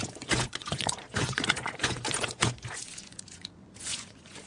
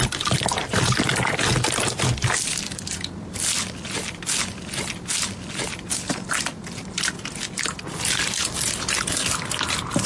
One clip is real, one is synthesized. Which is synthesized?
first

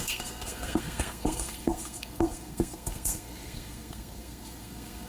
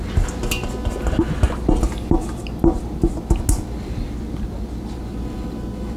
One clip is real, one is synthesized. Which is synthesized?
first